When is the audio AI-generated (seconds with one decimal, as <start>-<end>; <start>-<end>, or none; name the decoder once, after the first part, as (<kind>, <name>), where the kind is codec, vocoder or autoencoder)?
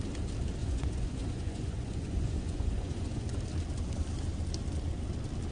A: 0.6-3.4 (vocoder, Vocos)